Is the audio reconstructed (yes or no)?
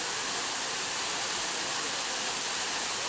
no